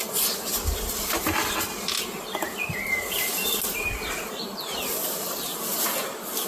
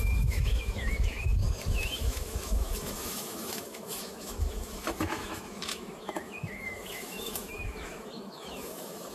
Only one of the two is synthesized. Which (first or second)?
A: second